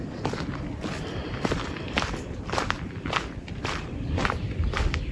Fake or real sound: fake